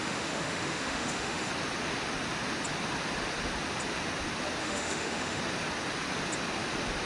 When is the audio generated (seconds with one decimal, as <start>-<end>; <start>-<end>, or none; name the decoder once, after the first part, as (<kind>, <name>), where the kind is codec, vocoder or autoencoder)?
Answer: 0.0-1.5 (autoencoder, DAC-VAE); 4.6-5.4